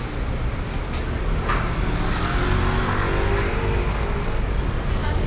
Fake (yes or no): no